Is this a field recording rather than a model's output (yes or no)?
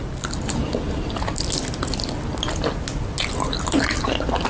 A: yes